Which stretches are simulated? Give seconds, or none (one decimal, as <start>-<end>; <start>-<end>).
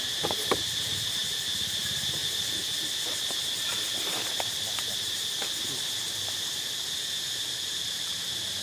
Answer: 0.0-2.2; 7.1-8.6